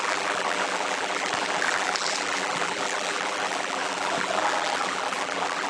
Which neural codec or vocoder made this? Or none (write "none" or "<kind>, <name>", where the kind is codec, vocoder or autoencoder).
vocoder, BigVGAN v2